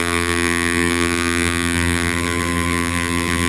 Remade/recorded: remade